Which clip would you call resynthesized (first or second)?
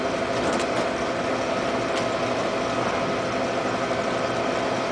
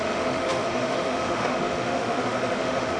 second